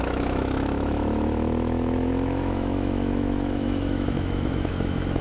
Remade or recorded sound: remade